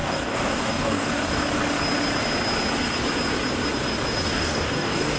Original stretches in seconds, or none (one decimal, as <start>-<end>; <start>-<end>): 1.4-4.2